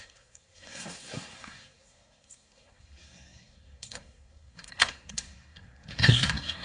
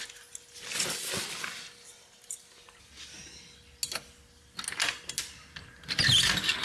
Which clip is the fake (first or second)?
first